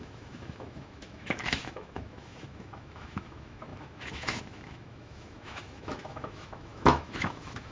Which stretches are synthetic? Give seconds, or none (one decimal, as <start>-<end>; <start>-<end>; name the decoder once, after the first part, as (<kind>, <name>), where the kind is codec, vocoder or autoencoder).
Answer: 0.0-7.7 (autoencoder, DAC-VAE)